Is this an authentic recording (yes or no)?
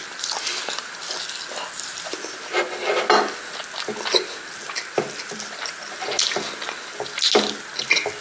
yes